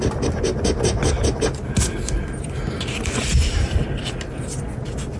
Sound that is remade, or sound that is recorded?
recorded